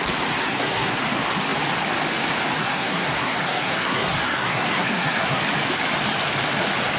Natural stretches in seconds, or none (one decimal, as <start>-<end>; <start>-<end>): 0.0-0.4; 1.0-2.6; 5.4-7.0